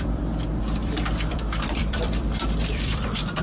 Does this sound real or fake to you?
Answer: fake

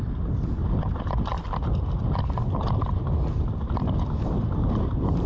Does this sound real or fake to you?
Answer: real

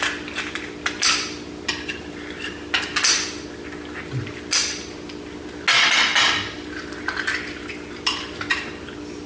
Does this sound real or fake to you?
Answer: real